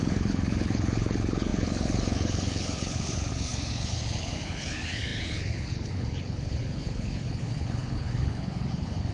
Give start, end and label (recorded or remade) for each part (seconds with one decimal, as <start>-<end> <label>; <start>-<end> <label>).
0.0-9.1 remade